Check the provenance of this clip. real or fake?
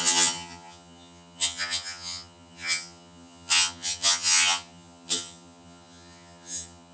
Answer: fake